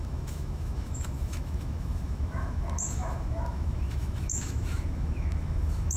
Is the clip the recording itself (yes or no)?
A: no